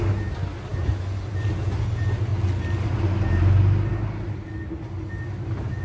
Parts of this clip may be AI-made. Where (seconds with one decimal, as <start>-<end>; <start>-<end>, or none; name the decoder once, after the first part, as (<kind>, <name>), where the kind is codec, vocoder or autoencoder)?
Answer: none